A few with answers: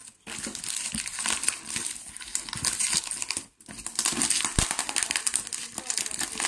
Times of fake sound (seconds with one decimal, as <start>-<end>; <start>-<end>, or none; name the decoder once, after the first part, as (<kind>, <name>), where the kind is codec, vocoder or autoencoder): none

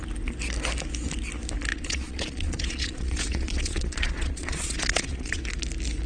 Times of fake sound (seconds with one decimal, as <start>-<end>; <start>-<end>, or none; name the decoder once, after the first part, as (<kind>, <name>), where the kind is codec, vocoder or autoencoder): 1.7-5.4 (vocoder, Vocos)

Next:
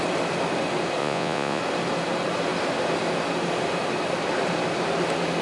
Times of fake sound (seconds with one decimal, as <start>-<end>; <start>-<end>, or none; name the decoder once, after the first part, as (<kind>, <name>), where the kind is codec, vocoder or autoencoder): 1.0-1.6 (vocoder, Vocos)

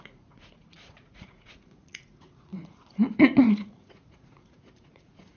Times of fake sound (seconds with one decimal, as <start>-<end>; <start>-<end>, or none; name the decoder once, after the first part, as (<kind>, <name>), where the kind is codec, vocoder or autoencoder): 0.0-5.4 (vocoder, Vocos)

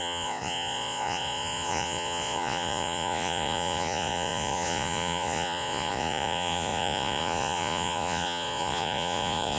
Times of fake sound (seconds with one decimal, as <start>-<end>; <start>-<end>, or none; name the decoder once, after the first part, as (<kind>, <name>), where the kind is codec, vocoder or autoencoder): 0.0-9.6 (vocoder, Vocos)

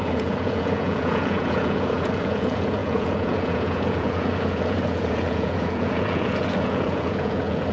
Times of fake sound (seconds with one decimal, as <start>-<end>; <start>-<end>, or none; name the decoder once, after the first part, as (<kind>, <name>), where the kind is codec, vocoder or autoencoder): 0.0-7.7 (vocoder, Vocos)